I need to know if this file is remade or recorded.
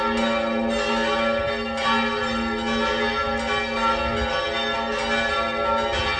recorded